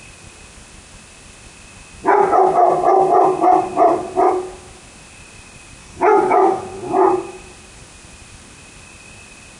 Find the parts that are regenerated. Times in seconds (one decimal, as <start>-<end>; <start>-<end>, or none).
5.8-6.6